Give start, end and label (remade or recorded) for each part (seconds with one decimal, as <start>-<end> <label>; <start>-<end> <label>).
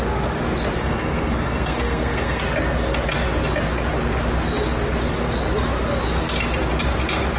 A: 0.0-0.8 recorded; 0.8-2.4 remade; 2.4-7.4 recorded